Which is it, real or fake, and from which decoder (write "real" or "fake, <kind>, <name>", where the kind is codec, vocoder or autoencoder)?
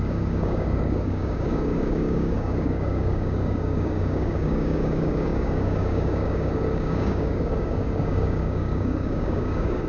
fake, codec, DAC